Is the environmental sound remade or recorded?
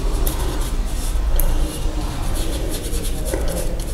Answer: recorded